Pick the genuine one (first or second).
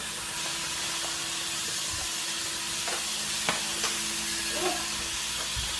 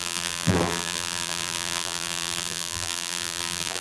first